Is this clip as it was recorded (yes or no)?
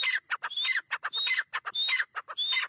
yes